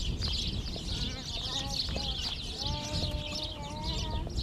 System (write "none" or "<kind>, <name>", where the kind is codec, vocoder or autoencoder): none